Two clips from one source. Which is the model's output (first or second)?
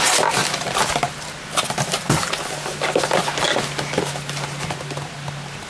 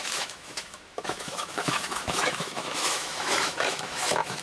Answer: second